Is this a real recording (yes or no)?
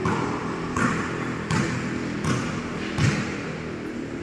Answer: yes